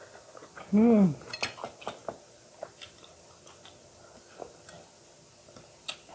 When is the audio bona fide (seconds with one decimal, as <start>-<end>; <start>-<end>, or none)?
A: 0.0-6.1